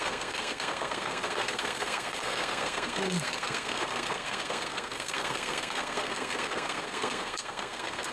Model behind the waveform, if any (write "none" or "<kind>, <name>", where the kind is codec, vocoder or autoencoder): codec, SNAC